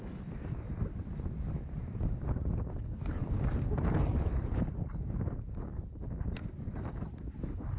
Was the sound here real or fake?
fake